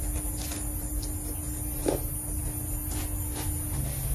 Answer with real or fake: real